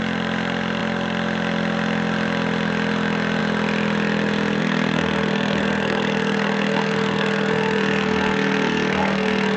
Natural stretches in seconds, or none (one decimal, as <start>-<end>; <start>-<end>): 0.0-4.6